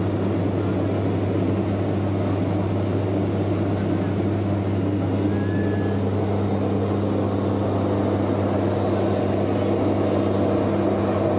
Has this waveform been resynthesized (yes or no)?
no